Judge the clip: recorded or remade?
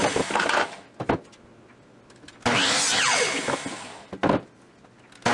recorded